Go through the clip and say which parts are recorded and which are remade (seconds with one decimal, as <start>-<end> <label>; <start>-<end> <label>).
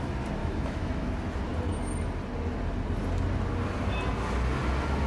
0.0-0.4 recorded; 0.4-1.1 remade; 1.1-5.1 recorded